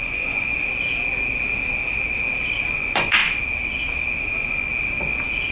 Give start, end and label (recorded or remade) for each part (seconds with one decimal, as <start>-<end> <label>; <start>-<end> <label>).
0.0-0.5 remade; 0.5-2.6 recorded; 2.6-3.2 remade; 3.2-4.2 recorded; 4.2-4.7 remade; 4.7-5.5 recorded